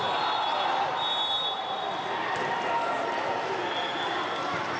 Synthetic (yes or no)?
no